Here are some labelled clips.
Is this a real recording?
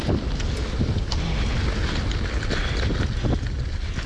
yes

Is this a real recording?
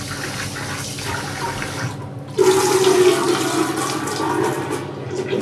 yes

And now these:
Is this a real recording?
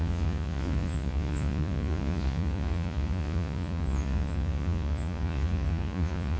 no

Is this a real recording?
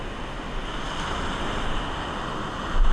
yes